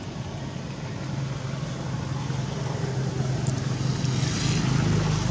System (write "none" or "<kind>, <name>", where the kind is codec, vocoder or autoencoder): none